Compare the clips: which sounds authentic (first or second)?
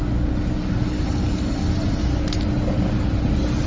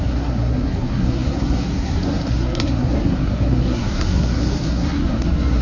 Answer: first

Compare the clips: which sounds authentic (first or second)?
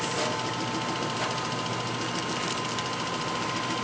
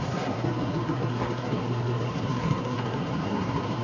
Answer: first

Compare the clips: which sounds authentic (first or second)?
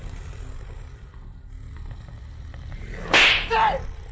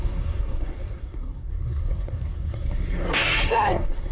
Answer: first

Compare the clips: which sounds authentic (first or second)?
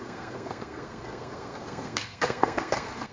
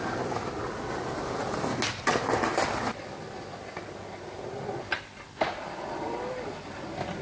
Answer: second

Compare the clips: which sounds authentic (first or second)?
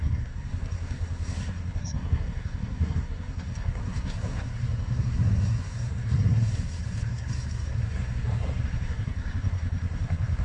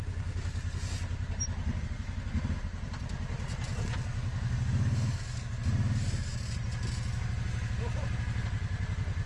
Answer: second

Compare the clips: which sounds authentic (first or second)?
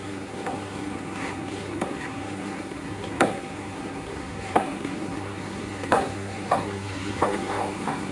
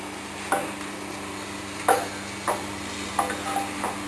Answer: second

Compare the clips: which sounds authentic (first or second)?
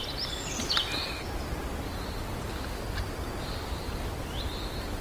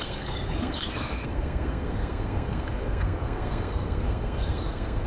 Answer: first